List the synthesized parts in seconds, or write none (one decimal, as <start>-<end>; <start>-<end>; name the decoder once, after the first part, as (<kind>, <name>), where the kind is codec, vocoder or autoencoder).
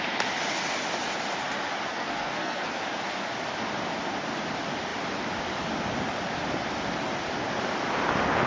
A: 1.9-2.8 (codec, SNAC)